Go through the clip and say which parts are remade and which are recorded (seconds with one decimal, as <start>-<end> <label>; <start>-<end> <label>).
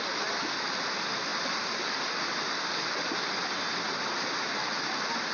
0.0-5.3 recorded